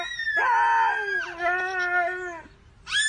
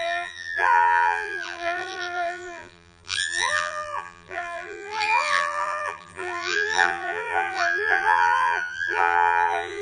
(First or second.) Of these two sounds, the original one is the first